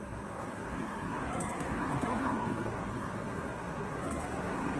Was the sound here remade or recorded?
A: remade